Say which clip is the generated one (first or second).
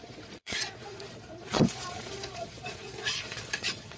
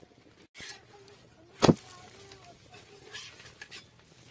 first